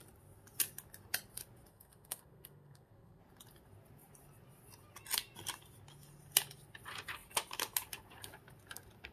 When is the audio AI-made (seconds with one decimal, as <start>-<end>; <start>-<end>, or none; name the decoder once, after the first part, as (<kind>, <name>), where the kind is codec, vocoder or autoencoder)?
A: 1.7-3.2 (codec, SNAC)